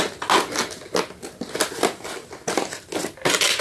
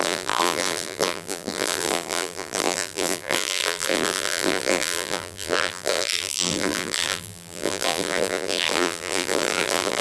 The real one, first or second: first